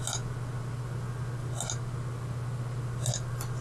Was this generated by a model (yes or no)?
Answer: no